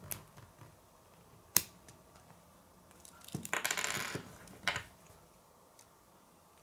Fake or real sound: fake